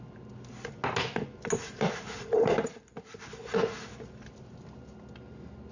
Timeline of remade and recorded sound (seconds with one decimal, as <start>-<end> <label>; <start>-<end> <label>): 0.0-5.7 recorded